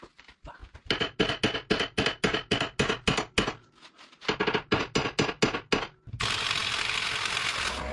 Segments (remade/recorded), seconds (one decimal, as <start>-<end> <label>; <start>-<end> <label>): 0.0-7.9 recorded